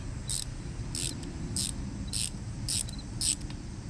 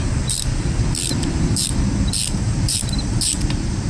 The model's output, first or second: second